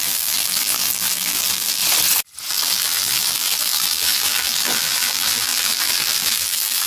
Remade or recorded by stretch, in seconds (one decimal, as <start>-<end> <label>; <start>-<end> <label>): 0.0-1.8 remade; 1.8-2.5 recorded; 2.5-6.9 remade